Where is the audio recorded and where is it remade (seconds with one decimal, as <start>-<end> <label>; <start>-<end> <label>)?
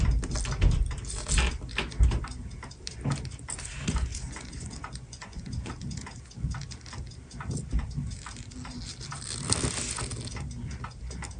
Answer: 0.0-4.1 recorded; 4.1-5.7 remade; 5.7-11.4 recorded